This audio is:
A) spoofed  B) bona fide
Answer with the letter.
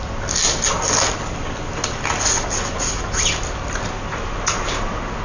B